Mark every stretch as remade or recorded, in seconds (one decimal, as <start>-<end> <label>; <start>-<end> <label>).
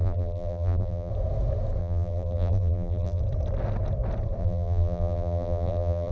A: 0.0-1.1 remade; 1.1-1.8 recorded; 1.8-3.2 remade; 3.2-4.4 recorded; 4.4-6.1 remade